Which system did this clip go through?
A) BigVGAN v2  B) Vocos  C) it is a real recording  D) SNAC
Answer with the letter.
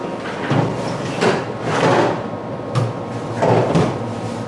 C